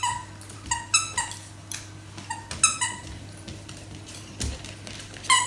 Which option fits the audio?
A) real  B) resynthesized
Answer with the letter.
A